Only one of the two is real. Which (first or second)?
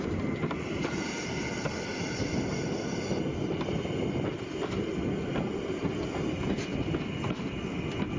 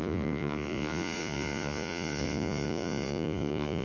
first